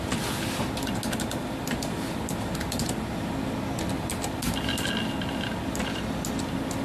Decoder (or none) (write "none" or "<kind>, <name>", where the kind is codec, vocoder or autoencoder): none